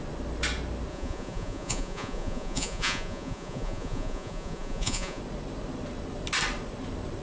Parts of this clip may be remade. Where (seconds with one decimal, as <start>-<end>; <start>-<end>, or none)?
0.9-5.2